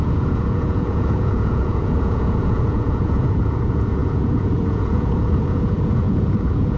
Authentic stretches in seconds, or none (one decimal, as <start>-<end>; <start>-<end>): none